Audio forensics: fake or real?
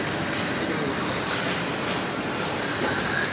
real